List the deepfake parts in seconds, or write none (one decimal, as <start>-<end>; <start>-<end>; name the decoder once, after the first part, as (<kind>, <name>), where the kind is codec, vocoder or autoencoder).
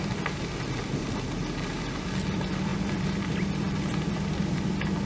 0.0-1.0 (vocoder, BigVGAN v2); 1.7-5.1